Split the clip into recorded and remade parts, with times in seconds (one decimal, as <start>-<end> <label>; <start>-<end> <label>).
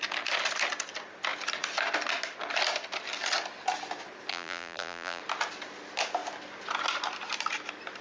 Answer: 0.0-4.3 recorded; 4.3-5.2 remade; 5.2-8.0 recorded